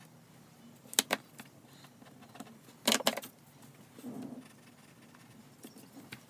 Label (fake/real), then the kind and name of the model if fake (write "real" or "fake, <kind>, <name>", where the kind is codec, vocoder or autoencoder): real